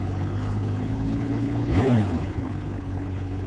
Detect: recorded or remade remade